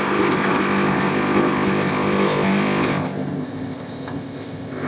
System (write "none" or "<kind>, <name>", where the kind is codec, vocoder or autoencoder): codec, ZipCodec